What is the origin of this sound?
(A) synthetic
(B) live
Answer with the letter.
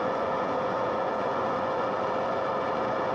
A